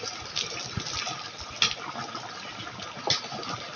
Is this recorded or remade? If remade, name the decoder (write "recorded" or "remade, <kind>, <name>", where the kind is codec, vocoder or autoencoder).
recorded